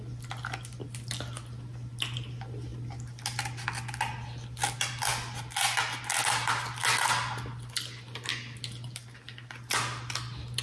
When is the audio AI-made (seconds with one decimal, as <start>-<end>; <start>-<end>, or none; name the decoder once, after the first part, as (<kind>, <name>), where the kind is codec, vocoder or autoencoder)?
none